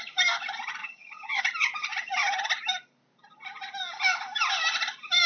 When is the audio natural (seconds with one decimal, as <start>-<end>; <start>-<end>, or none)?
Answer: 0.0-0.8; 1.4-5.3